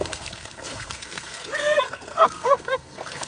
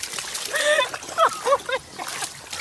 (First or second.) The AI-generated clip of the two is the first